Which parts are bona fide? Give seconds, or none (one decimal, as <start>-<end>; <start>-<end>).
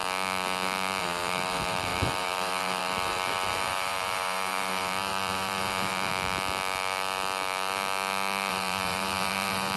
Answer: 0.0-1.0; 6.1-8.5